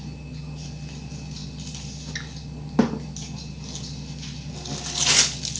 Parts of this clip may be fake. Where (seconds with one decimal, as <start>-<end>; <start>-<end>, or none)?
none